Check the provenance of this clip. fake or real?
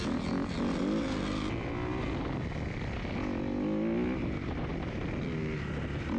real